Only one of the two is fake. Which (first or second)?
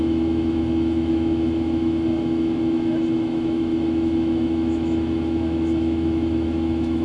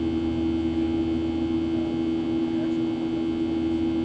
first